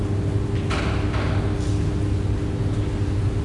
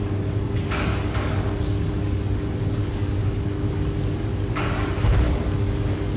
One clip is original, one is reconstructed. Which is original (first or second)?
first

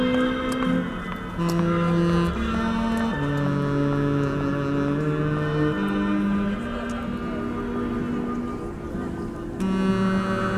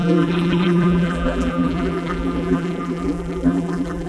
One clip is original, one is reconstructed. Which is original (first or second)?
first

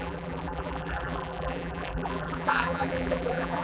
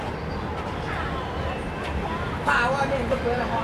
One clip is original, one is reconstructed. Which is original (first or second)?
second